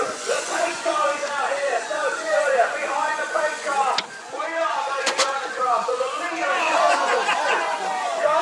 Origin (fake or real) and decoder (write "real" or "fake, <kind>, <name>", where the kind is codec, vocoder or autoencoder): fake, vocoder, Vocos